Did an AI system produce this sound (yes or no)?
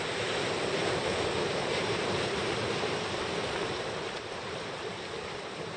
yes